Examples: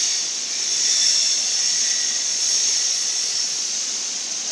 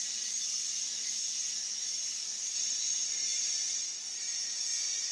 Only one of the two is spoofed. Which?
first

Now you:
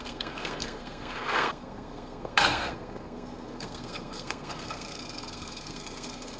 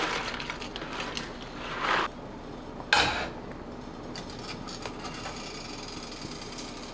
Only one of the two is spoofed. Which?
first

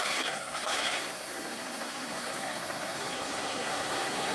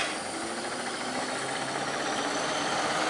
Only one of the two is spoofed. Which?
first